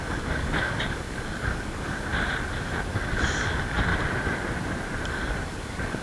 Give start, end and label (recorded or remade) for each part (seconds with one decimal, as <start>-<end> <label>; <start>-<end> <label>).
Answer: 0.0-2.1 remade; 2.1-2.9 recorded; 2.9-3.9 remade; 3.9-5.1 recorded; 5.1-6.0 remade